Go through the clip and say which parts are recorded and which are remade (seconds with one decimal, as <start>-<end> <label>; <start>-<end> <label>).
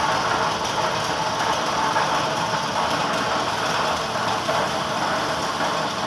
0.0-6.1 recorded